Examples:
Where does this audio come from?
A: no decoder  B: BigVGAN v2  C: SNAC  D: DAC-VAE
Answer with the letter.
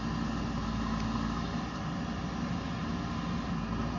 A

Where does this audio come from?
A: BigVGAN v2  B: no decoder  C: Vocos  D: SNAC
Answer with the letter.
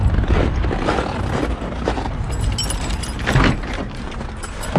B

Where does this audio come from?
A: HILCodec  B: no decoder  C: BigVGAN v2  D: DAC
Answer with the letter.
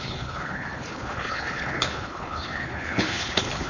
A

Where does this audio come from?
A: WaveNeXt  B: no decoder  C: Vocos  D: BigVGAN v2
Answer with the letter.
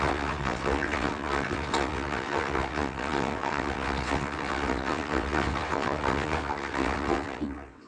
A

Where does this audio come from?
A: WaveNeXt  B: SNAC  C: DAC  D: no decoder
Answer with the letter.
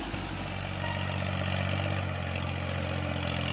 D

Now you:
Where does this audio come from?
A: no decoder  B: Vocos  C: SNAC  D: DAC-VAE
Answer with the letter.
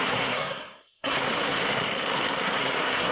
C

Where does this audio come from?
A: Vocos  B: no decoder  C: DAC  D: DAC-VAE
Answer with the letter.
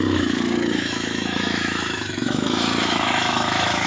D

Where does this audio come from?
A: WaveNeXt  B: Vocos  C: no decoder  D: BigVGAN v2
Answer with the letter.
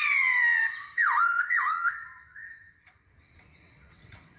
A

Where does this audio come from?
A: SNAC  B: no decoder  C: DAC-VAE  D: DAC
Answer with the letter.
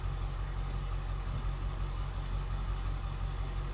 D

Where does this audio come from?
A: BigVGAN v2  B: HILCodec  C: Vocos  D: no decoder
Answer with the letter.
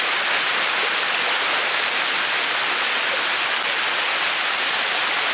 D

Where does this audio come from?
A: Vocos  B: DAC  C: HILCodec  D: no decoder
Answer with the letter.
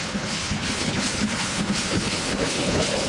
C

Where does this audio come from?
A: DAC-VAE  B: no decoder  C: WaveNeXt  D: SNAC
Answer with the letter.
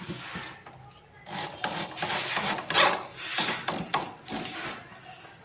B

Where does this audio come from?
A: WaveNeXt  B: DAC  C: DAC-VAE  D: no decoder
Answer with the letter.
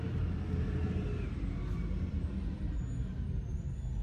D